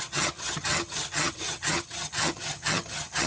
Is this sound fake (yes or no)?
yes